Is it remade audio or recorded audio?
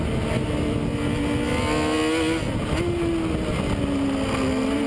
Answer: recorded